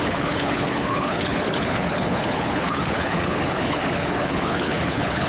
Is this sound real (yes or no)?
no